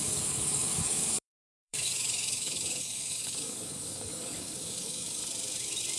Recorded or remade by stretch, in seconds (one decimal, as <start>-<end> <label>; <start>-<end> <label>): 0.0-5.2 remade; 5.2-6.0 recorded